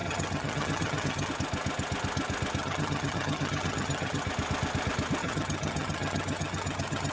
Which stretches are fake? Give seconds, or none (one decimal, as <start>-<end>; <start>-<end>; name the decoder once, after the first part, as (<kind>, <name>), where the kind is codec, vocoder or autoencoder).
0.0-1.3 (vocoder, HiFi-GAN); 2.6-4.2; 5.2-7.1

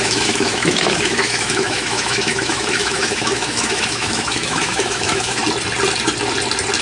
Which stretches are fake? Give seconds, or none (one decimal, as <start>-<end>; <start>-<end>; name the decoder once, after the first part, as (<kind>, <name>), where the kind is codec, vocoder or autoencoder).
0.0-5.4 (autoencoder, DAC-VAE)